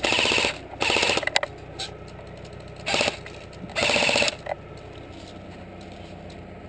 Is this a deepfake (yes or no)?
no